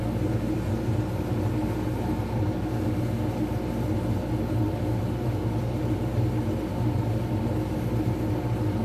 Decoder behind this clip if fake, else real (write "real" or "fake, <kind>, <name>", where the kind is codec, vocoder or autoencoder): real